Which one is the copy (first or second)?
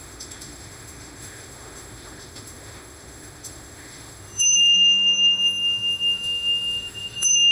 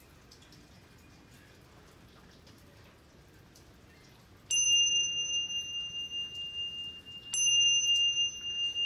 first